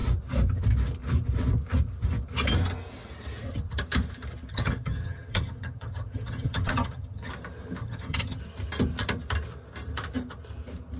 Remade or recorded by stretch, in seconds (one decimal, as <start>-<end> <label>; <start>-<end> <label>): 0.0-4.5 recorded; 4.5-7.3 remade; 7.3-7.8 recorded; 7.8-8.4 remade; 8.4-11.0 recorded